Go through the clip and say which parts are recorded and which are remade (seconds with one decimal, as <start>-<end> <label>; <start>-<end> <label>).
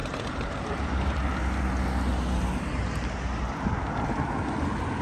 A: 0.0-1.2 remade; 1.2-5.0 recorded